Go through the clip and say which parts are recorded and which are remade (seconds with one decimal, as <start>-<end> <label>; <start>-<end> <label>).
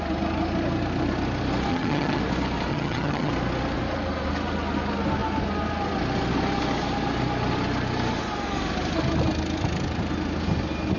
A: 0.0-1.7 recorded; 1.7-2.2 remade; 2.2-2.7 recorded; 2.7-3.3 remade; 3.3-11.0 recorded